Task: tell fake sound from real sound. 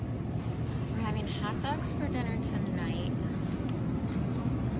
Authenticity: real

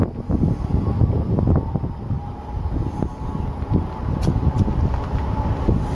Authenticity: real